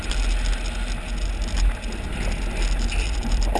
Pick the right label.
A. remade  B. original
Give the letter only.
B